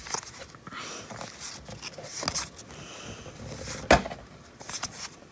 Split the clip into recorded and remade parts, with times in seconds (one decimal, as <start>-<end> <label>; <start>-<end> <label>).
0.0-5.3 recorded